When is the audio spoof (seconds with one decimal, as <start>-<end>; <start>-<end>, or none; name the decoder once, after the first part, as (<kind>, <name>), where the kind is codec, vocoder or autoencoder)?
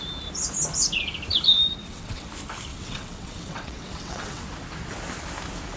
1.8-2.3 (vocoder, WaveNeXt); 2.7-4.4